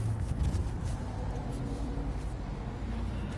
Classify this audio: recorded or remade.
recorded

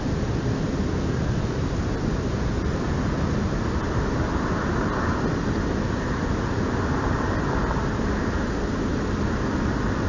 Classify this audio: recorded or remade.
recorded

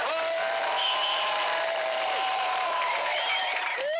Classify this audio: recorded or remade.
remade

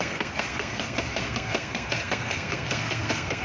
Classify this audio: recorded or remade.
remade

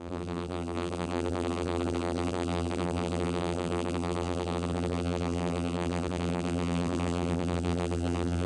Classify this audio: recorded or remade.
remade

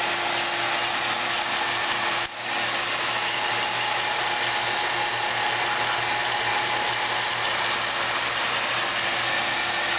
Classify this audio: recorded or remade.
recorded